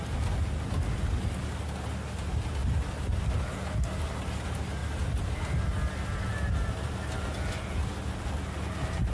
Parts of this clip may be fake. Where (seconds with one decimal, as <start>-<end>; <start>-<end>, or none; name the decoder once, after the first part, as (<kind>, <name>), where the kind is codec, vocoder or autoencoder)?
4.8-5.4 (vocoder, BigVGAN v2)